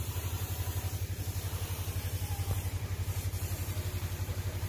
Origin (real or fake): fake